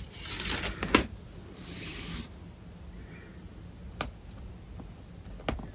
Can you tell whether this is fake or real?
real